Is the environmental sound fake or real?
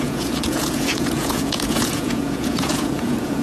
fake